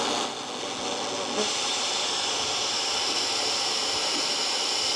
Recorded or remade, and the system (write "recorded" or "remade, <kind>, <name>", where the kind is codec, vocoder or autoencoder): recorded